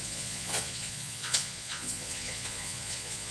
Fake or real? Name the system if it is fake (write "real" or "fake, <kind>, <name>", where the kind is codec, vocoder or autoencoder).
fake, vocoder, Vocos